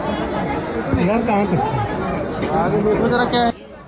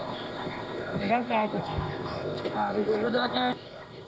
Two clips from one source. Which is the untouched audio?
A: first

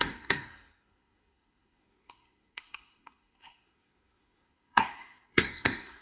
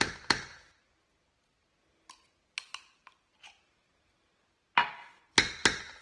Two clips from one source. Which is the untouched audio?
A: second